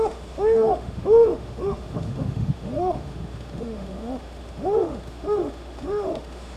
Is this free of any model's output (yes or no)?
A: no